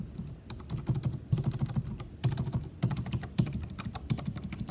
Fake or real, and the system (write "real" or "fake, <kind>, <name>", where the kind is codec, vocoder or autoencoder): real